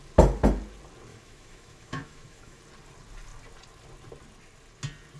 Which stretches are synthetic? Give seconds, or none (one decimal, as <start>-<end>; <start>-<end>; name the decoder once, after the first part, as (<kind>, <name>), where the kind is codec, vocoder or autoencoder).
1.1-2.6 (autoencoder, DAC-VAE)